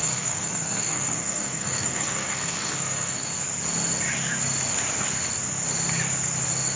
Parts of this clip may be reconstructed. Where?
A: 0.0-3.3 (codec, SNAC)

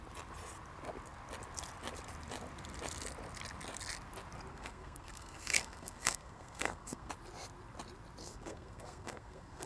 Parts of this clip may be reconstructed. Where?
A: 4.5-7.1 (codec, SNAC); 8.2-9.7

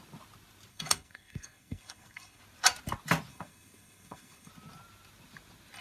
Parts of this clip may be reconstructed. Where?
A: 0.7-2.4 (codec, SNAC); 3.3-4.5

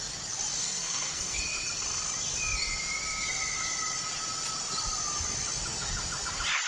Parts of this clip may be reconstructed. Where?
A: 0.6-1.7 (codec, SNAC)